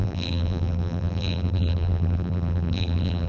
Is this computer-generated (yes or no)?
yes